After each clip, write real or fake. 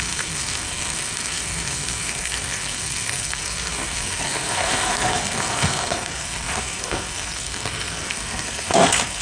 fake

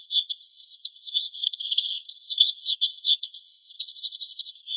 fake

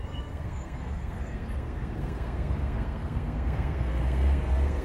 fake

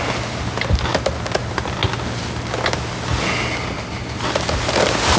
real